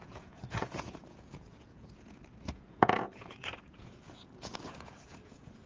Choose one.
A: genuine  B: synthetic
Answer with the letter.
B